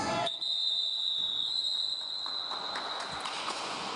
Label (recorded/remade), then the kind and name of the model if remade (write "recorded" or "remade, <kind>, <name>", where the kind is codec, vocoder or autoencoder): remade, vocoder, Vocos